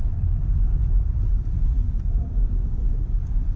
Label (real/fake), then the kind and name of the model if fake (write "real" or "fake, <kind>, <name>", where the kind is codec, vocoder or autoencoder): fake, vocoder, BigVGAN v2